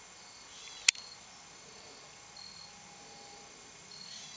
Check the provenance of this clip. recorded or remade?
recorded